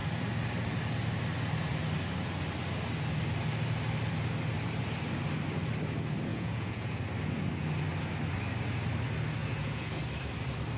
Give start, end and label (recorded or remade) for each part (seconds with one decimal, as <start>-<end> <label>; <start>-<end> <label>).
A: 0.0-6.3 recorded; 6.3-7.0 remade; 7.0-9.4 recorded; 9.4-10.0 remade; 10.0-10.8 recorded